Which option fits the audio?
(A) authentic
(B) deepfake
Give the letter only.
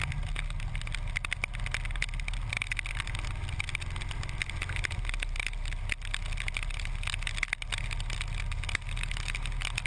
A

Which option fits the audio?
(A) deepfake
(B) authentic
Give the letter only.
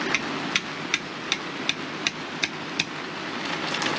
B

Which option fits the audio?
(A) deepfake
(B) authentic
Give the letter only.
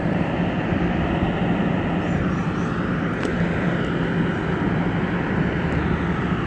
B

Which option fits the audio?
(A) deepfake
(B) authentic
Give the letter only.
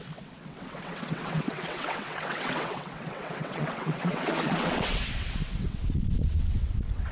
A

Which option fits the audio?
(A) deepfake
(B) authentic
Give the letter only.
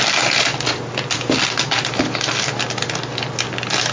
B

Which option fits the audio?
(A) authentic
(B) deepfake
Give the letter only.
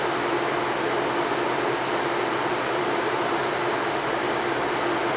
A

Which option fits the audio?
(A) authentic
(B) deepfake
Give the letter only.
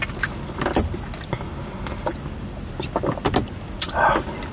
A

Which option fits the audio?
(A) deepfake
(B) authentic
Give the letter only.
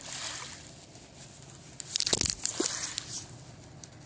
B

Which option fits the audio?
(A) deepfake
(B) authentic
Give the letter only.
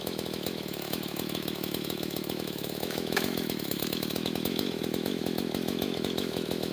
A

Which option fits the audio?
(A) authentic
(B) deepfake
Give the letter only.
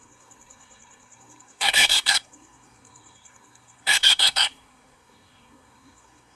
B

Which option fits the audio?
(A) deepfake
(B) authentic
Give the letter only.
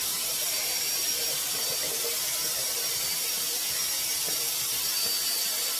A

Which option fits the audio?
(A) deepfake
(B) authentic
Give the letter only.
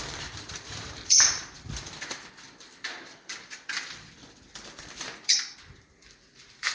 A